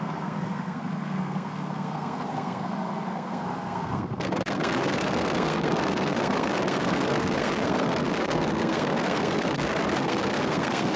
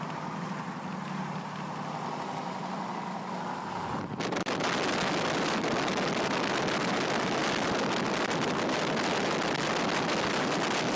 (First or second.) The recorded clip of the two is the second